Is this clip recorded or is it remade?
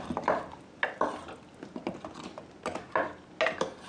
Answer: recorded